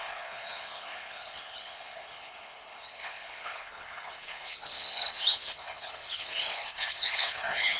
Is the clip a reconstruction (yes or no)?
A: yes